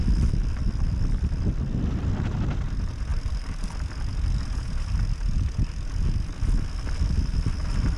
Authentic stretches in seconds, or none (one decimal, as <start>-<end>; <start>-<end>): 0.0-8.0